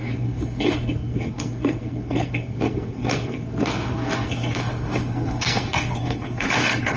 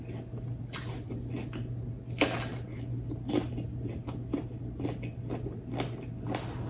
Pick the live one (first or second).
second